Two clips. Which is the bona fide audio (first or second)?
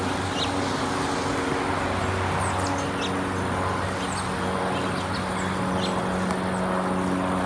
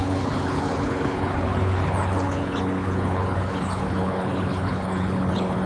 first